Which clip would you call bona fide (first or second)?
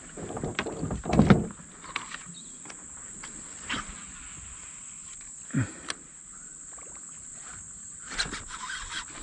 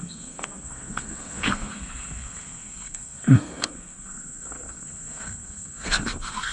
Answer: first